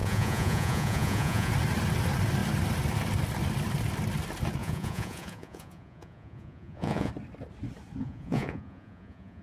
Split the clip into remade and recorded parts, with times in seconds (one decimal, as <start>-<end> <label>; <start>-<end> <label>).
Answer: 0.0-1.5 remade; 1.5-4.6 recorded; 4.6-7.1 remade; 7.1-8.0 recorded; 8.0-9.4 remade